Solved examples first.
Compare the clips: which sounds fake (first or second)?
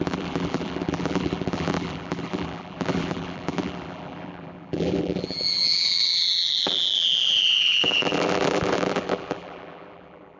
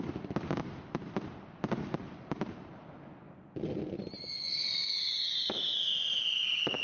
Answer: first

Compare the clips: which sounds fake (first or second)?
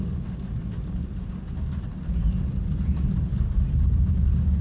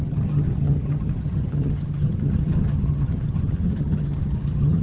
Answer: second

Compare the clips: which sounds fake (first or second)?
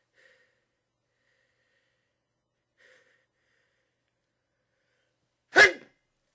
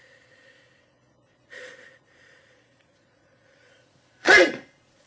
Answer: second